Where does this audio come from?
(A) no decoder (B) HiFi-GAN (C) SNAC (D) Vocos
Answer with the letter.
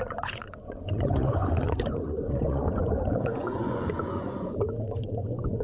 D